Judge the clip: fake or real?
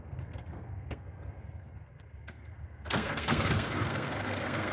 fake